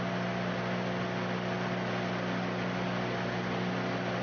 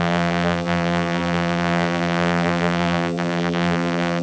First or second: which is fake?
second